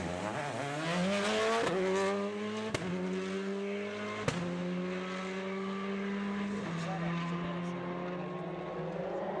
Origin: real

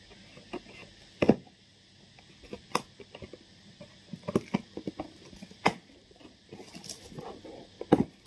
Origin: real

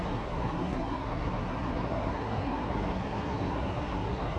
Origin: fake